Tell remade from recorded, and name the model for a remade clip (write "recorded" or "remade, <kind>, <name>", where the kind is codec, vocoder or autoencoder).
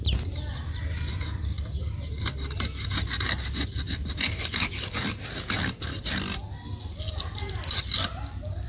recorded